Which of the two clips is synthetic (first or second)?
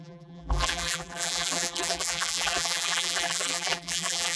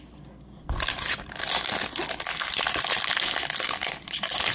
first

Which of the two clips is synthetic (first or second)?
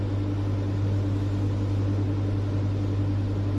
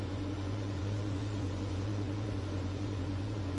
second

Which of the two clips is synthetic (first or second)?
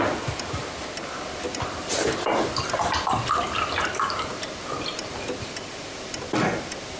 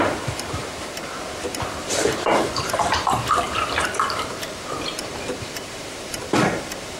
second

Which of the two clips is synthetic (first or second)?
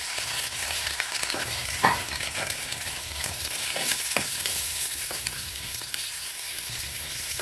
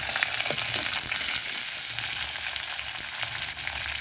first